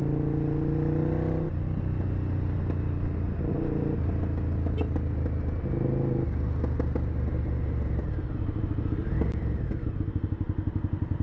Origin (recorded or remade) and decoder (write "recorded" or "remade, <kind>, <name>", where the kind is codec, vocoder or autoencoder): recorded